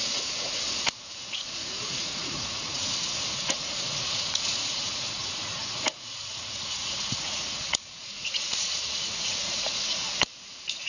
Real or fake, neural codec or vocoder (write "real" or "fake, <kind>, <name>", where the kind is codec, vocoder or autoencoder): fake, vocoder, Vocos